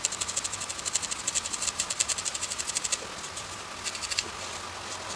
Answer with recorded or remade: recorded